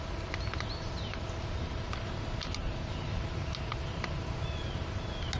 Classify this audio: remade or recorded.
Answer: recorded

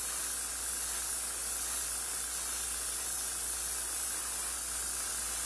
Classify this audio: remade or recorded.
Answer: recorded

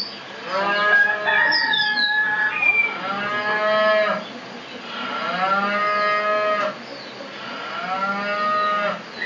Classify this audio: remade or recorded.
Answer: recorded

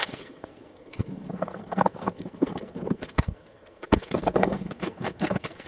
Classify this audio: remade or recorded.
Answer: remade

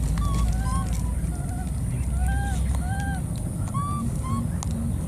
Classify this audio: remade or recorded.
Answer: recorded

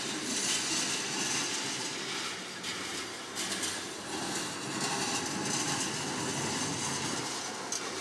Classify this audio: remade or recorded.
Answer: recorded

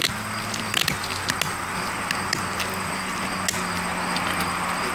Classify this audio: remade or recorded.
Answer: recorded